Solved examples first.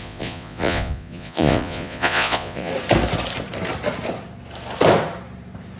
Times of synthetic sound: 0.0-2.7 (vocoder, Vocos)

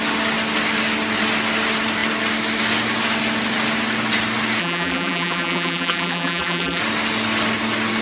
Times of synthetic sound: 4.6-6.8 (vocoder, BigVGAN v2)

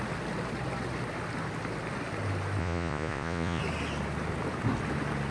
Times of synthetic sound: 2.6-3.6 (vocoder, Vocos)